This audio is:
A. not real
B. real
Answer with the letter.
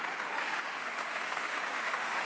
A